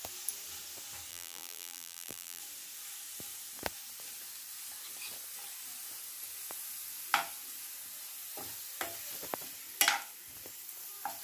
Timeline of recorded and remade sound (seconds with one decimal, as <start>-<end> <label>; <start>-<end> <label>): 0.0-1.1 recorded; 1.1-2.4 remade; 2.4-11.2 recorded